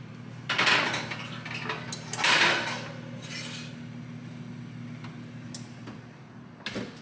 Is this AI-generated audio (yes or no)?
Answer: no